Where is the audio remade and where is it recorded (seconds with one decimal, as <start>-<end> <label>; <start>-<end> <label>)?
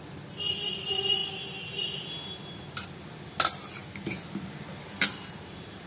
0.0-1.2 remade; 1.2-2.1 recorded; 2.1-3.8 remade; 3.8-4.8 recorded; 4.8-5.9 remade